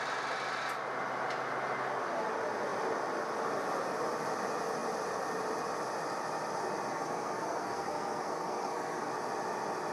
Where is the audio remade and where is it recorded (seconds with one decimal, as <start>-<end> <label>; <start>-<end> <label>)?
0.0-6.9 recorded; 6.9-9.1 remade; 9.1-9.9 recorded